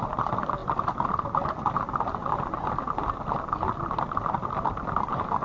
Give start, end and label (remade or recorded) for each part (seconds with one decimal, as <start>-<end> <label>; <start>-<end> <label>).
0.0-5.4 recorded